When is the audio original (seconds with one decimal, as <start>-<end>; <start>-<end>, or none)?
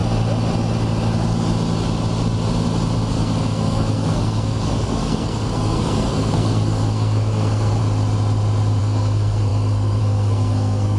0.0-3.1; 7.8-8.8